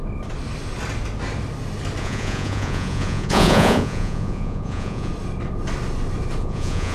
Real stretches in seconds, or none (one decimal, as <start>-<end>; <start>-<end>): 0.0-2.0; 5.1-6.4